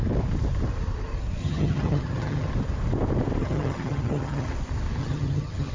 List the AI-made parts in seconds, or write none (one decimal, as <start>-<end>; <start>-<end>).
1.4-2.5; 3.4-4.5; 5.0-5.7